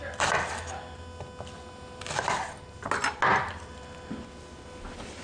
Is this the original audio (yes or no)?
yes